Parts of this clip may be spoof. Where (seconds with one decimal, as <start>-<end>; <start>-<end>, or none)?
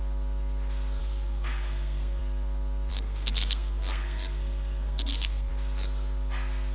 1.0-2.2; 2.9-5.5